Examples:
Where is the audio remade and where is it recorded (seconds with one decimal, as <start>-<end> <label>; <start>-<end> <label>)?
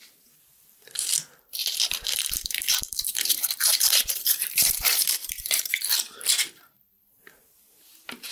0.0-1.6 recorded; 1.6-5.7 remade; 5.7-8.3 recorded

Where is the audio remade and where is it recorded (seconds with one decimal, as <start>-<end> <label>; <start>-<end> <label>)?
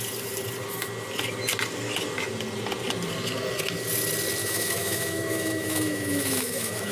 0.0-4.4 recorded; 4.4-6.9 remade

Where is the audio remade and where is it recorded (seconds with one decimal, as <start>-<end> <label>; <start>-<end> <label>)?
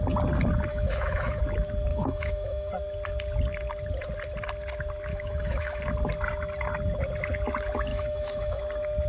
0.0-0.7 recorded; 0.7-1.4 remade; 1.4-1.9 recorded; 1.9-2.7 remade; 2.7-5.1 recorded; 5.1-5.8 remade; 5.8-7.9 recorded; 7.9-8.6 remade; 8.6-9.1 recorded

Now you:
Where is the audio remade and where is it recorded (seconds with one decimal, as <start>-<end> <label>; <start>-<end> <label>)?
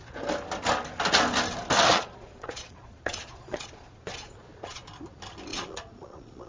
0.0-1.9 recorded; 1.9-4.9 remade; 4.9-5.5 recorded; 5.5-6.5 remade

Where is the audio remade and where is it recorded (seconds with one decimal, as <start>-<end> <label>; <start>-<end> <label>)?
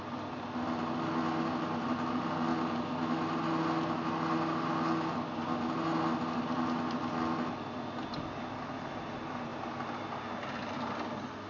0.0-11.5 recorded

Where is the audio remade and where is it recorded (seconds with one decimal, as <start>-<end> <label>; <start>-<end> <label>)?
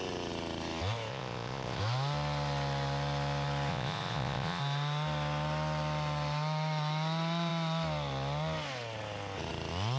0.0-1.1 recorded; 1.1-1.8 remade; 1.8-3.7 recorded; 3.7-4.6 remade; 4.6-10.0 recorded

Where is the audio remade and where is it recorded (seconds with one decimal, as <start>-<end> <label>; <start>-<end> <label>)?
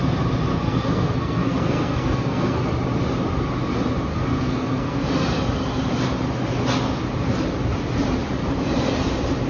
0.0-0.5 recorded; 0.5-2.6 remade; 2.6-4.1 recorded; 4.1-5.0 remade; 5.0-9.5 recorded